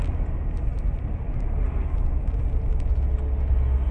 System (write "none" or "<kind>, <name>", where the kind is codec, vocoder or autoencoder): none